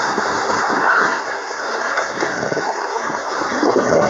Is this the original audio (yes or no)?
no